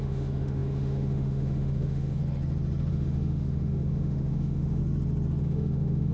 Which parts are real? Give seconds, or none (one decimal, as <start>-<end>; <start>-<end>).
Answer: 2.2-2.9; 4.8-5.4